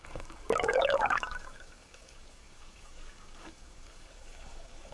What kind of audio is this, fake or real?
fake